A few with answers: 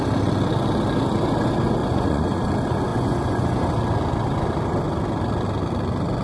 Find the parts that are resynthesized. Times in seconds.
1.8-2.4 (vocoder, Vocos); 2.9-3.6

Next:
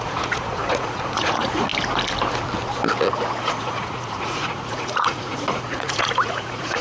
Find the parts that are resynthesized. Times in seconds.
0.0-1.7 (vocoder, Vocos); 3.4-6.8

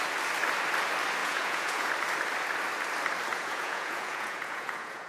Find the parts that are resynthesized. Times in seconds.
1.2-1.9 (vocoder, Vocos); 3.3-5.1